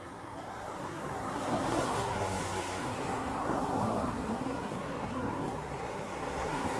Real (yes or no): no